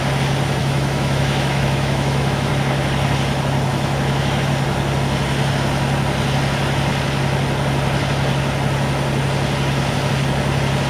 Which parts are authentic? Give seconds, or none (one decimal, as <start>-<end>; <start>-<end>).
0.0-0.6; 2.5-3.7; 4.5-10.9